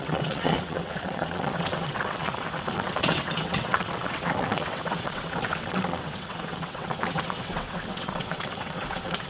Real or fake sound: fake